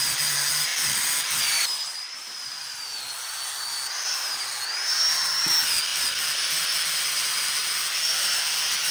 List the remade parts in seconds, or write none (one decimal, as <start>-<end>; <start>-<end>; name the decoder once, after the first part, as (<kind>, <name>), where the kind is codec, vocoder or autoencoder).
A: none